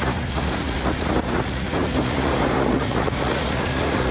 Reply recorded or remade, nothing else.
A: remade